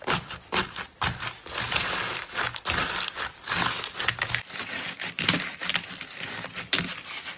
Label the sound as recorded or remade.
recorded